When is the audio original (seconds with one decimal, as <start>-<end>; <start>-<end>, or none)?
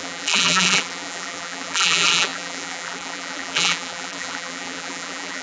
none